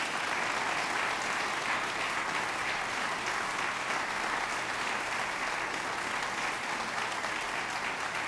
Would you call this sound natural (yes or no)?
yes